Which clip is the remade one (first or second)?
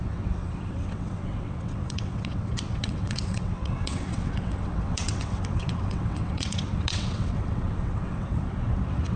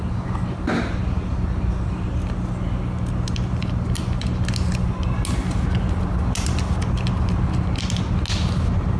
first